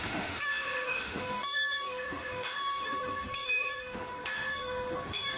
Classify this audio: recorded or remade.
remade